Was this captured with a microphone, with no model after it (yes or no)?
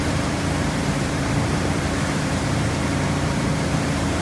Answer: no